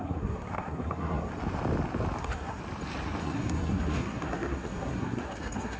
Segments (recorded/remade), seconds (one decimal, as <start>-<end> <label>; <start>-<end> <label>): 0.0-1.3 remade; 1.3-2.2 recorded; 2.2-2.6 remade; 2.6-3.2 recorded; 3.2-5.8 remade